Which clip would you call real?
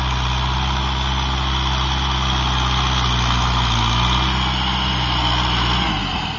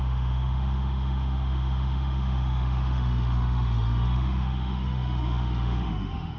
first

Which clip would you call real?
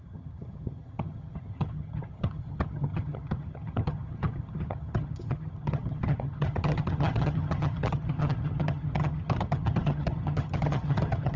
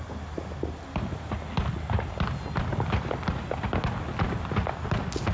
second